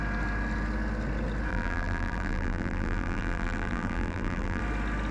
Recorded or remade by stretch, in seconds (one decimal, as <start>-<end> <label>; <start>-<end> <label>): 0.0-1.5 recorded; 1.5-4.6 remade; 4.6-5.1 recorded